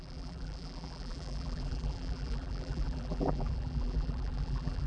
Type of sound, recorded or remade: remade